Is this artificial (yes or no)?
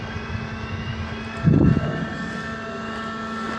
no